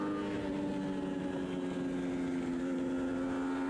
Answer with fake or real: real